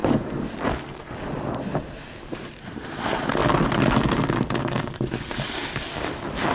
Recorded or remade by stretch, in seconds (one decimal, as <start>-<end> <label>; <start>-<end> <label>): 0.0-0.5 recorded; 0.5-0.9 remade; 0.9-2.5 recorded; 2.5-3.4 remade; 3.4-4.6 recorded; 4.6-6.5 remade